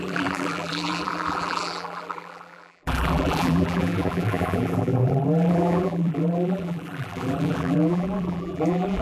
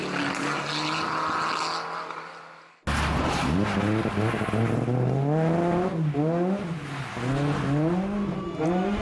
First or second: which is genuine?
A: second